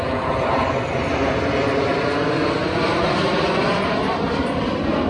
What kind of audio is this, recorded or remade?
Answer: recorded